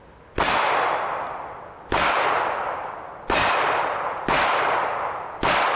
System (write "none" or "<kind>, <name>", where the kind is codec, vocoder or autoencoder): none